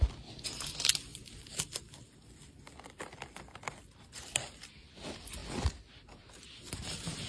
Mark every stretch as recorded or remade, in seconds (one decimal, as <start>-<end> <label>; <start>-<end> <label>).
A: 0.0-1.1 recorded; 1.1-4.7 remade; 4.7-7.3 recorded